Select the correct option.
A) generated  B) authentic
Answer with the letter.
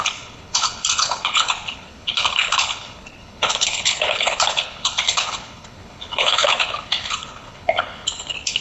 A